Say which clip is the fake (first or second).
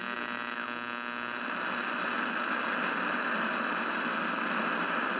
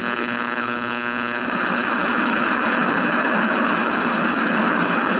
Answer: second